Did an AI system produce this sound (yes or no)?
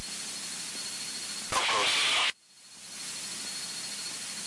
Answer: no